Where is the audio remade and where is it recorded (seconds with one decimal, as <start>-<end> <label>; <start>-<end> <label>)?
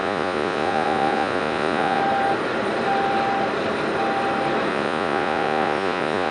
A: 0.0-2.0 remade; 2.0-4.7 recorded; 4.7-6.3 remade